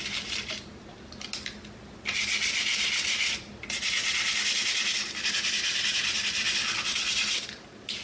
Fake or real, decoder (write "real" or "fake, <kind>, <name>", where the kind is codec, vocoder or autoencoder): real